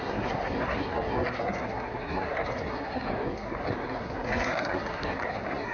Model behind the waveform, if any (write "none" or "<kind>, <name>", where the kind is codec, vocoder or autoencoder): codec, SNAC